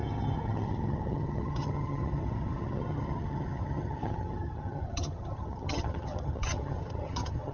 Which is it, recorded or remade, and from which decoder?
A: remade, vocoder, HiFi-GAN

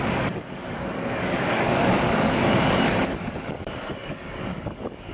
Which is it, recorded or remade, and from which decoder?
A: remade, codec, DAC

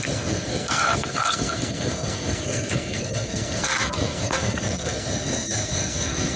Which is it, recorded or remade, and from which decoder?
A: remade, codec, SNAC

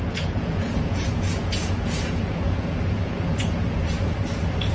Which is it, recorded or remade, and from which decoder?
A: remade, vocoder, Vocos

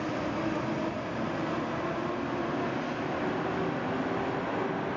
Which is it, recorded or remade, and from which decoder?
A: recorded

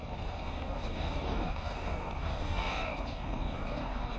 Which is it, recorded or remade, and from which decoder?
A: remade, codec, DAC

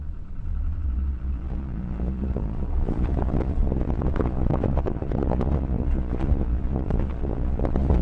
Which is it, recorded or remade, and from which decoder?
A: remade, vocoder, Vocos